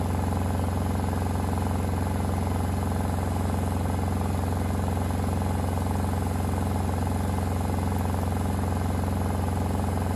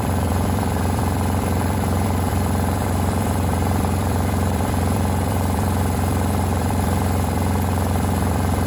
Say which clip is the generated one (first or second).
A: second